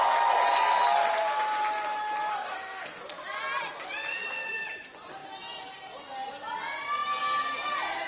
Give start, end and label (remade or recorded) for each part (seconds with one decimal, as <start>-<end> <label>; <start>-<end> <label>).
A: 0.0-2.3 recorded; 2.3-3.0 remade; 3.0-8.1 recorded